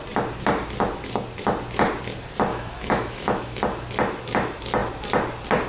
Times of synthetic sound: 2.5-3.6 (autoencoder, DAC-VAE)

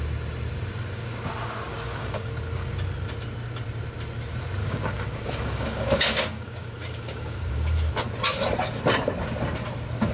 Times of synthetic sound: 1.7-2.3 (codec, DAC); 4.6-7.9

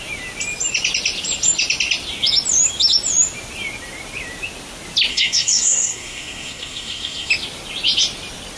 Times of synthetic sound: 5.1-7.3 (codec, SNAC)

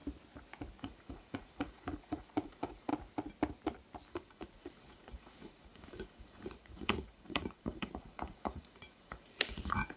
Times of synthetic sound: 0.8-2.9 (vocoder, Vocos); 4.1-10.0